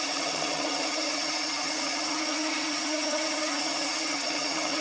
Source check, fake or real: fake